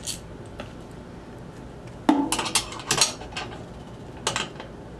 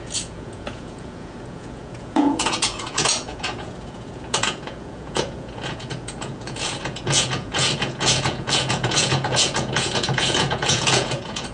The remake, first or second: second